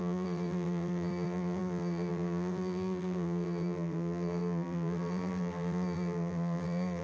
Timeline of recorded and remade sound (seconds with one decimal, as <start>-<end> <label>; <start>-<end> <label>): 0.0-7.0 remade